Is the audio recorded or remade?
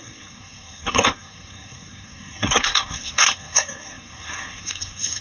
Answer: remade